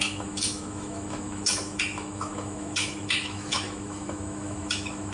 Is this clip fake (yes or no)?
yes